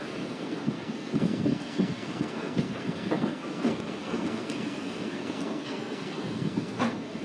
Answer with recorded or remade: remade